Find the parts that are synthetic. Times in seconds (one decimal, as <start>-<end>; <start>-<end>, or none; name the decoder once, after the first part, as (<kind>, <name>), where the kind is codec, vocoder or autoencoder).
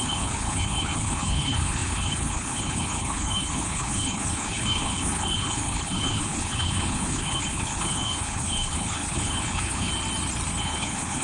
0.0-9.9 (codec, HILCodec); 10.6-11.2